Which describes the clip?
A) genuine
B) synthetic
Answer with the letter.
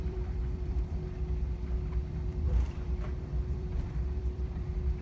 B